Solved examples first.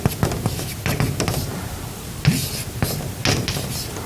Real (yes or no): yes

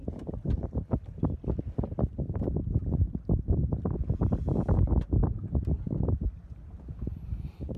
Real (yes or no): yes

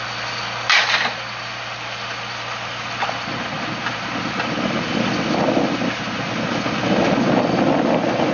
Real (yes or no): yes